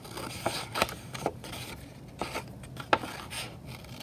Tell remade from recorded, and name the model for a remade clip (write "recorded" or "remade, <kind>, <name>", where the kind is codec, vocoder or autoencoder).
recorded